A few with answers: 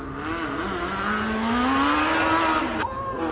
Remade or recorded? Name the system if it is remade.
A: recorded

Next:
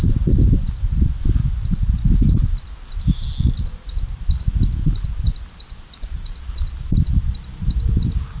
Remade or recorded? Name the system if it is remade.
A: recorded